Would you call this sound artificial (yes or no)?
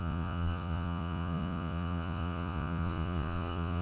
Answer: yes